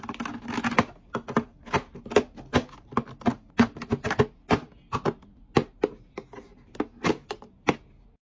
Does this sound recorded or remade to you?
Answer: recorded